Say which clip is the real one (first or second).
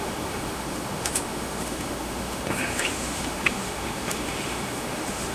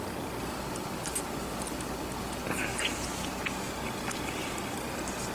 second